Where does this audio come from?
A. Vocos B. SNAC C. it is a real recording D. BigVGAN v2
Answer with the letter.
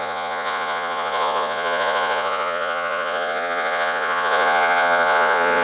A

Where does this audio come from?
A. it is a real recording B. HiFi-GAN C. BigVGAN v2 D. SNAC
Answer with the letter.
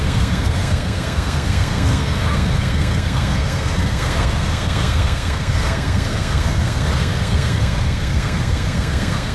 D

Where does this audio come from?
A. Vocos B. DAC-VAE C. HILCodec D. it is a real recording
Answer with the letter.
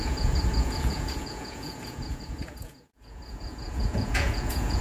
A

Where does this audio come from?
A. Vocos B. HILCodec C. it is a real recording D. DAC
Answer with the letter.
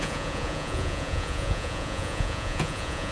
A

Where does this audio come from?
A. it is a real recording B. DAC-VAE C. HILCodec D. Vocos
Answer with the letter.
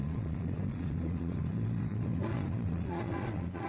D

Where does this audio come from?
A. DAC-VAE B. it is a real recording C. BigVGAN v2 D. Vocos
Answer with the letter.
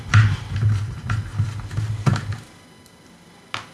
B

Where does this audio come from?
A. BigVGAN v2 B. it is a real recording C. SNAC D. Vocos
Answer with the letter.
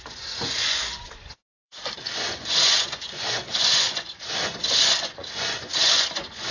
D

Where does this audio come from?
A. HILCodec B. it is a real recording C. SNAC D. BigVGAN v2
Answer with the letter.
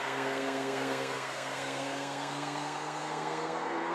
C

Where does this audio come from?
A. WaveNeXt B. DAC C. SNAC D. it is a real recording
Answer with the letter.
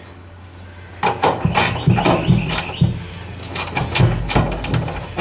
D